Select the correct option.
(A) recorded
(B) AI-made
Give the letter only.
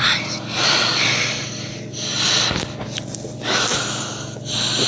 A